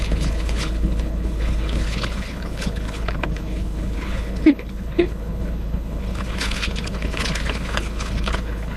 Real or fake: fake